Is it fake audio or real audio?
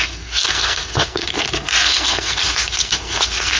fake